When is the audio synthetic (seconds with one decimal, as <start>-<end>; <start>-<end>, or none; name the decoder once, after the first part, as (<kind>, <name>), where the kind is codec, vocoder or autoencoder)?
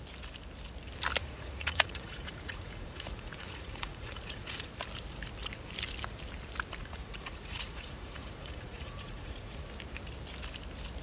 1.2-4.7 (vocoder, Vocos); 6.8-9.6